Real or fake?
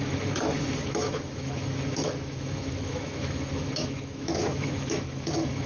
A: fake